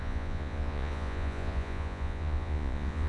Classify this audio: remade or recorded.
remade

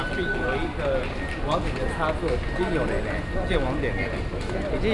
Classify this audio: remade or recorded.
recorded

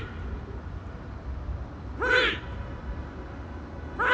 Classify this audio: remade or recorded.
recorded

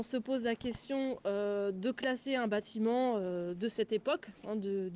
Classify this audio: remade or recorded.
recorded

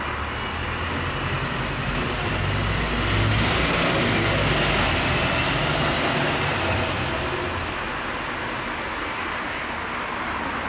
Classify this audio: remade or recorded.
recorded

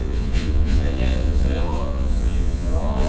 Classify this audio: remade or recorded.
remade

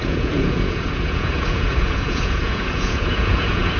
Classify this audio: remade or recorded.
remade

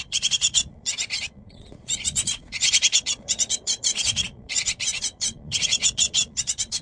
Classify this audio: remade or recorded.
remade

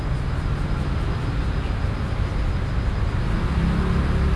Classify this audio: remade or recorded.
recorded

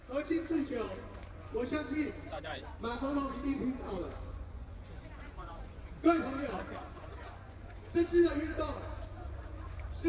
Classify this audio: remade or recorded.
remade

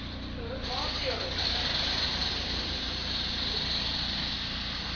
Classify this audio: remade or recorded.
recorded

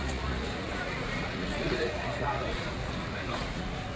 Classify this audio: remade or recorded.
remade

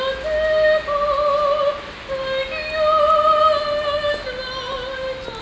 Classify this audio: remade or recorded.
recorded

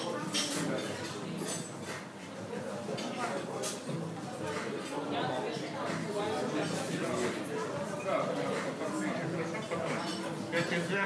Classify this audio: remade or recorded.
recorded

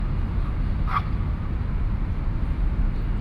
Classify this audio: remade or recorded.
recorded